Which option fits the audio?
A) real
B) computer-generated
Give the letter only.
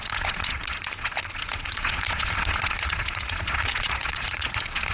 B